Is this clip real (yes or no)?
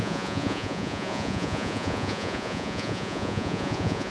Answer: no